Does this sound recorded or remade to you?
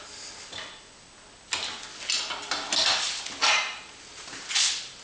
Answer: recorded